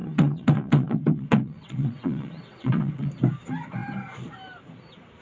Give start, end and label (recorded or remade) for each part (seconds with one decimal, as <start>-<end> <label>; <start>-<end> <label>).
0.0-3.1 remade; 3.1-5.2 recorded